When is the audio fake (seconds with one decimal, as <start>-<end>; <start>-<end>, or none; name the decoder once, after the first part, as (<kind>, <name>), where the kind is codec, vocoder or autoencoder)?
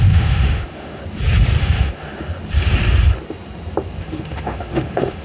0.0-1.0 (autoencoder, DAC-VAE); 1.6-2.3; 4.0-5.2